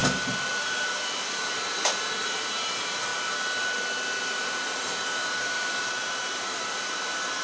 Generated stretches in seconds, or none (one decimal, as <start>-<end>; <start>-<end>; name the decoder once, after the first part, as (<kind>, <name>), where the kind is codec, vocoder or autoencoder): 0.5-3.1 (vocoder, BigVGAN v2); 4.2-7.4